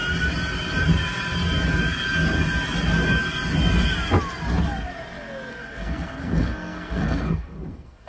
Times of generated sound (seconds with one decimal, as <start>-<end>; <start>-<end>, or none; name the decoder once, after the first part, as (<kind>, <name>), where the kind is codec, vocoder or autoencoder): 5.5-8.1 (codec, SNAC)